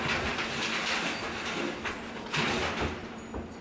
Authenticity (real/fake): real